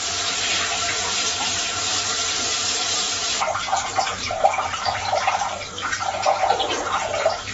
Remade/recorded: remade